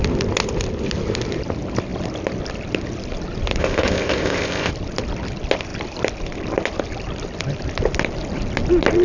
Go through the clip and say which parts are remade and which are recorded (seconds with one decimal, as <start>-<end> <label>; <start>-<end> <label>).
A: 0.0-3.6 recorded; 3.6-4.7 remade; 4.7-9.0 recorded